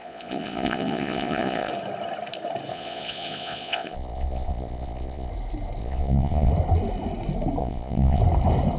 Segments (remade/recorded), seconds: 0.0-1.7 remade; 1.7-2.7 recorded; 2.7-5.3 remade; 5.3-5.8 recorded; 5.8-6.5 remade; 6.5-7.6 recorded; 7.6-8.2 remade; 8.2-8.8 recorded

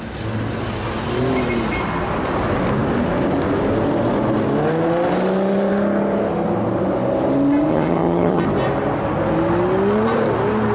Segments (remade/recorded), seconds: 0.0-7.7 recorded; 7.7-8.4 remade; 8.4-10.7 recorded